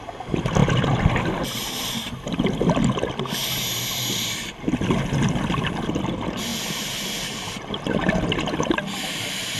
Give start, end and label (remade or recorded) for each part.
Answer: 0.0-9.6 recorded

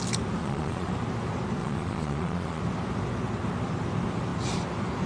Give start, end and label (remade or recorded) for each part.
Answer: 0.0-0.4 recorded; 0.4-0.9 remade; 0.9-1.6 recorded; 1.6-2.6 remade; 2.6-5.1 recorded

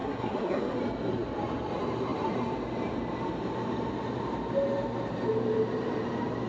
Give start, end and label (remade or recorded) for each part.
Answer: 0.0-0.8 remade; 0.8-6.5 recorded

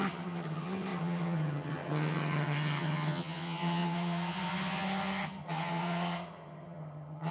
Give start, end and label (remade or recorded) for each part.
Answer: 0.0-7.3 remade

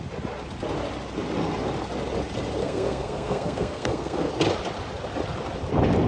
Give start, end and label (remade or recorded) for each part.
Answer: 0.0-2.6 recorded; 2.6-4.3 remade; 4.3-6.1 recorded

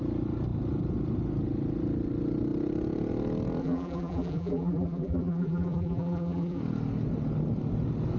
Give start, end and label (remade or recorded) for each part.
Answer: 0.0-3.6 recorded; 3.6-6.6 remade; 6.6-8.2 recorded

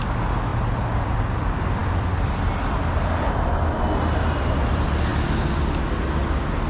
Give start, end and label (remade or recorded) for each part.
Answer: 0.0-0.5 recorded; 0.5-1.2 remade; 1.2-1.8 recorded; 1.8-2.5 remade; 2.5-6.7 recorded

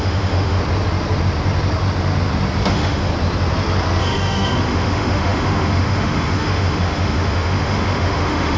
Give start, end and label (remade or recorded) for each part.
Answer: 0.0-0.6 remade; 0.6-2.7 recorded; 2.7-3.1 remade; 3.1-4.0 recorded; 4.0-8.6 remade